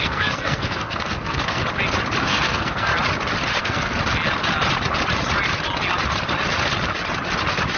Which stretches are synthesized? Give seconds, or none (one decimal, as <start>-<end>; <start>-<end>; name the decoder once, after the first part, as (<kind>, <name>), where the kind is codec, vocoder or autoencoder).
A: 0.0-1.6 (codec, SNAC); 2.2-2.9; 3.6-4.0